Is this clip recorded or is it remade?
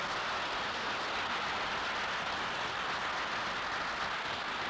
recorded